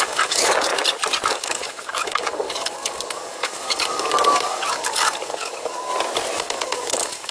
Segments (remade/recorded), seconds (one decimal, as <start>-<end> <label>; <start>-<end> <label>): 0.0-0.7 remade; 0.7-1.3 recorded; 1.3-5.9 remade; 5.9-6.4 recorded; 6.4-7.3 remade